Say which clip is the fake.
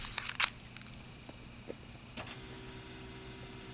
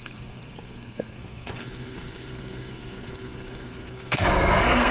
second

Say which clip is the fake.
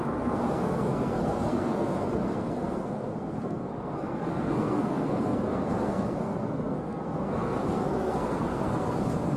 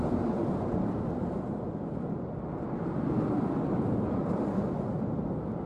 first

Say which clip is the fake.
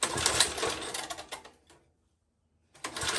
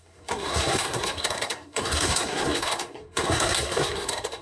second